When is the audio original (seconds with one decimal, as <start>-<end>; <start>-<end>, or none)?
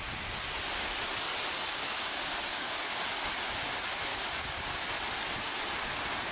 0.0-1.7; 3.0-4.1; 4.9-6.3